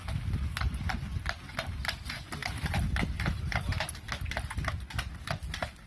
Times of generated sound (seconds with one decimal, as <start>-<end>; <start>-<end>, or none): none